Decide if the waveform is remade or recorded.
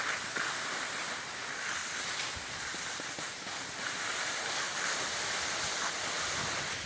recorded